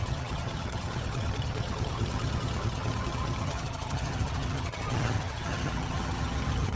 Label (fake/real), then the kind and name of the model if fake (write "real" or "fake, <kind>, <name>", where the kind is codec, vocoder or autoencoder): fake, vocoder, HiFi-GAN